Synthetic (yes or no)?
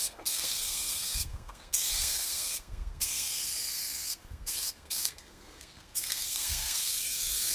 yes